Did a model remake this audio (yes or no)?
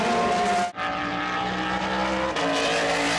no